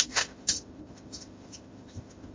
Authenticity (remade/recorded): remade